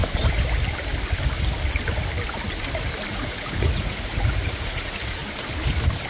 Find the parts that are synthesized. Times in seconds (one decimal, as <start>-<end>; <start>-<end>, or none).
3.1-5.2